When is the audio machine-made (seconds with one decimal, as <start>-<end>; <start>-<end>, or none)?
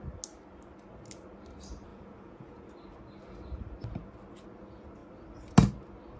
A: 1.9-2.7